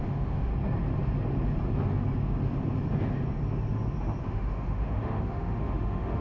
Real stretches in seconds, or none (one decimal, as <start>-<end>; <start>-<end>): 0.5-4.2